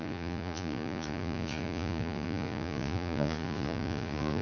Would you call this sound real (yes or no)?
no